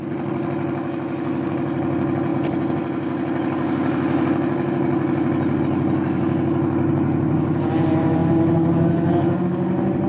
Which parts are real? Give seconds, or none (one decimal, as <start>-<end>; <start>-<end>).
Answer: 0.0-10.1